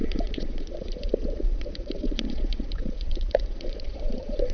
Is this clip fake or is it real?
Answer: fake